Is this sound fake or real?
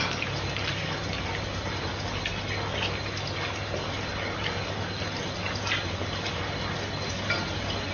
real